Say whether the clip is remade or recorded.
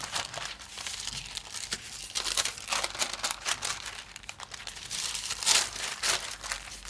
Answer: remade